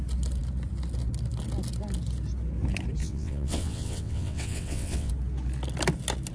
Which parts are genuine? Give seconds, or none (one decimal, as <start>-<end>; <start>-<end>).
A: 0.0-3.0; 5.1-6.3